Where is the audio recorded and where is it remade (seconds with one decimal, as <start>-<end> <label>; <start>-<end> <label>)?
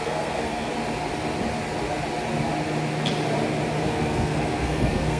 0.0-0.7 remade; 0.7-3.8 recorded; 3.8-5.2 remade